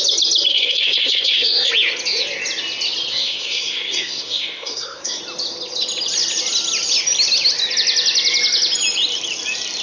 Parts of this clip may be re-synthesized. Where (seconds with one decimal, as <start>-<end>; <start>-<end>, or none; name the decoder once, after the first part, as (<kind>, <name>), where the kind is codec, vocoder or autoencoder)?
0.5-1.7 (codec, SNAC); 3.1-5.2